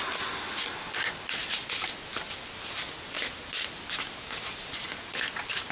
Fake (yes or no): no